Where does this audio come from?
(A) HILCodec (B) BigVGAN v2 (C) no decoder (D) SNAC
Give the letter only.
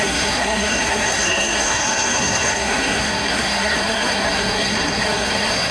D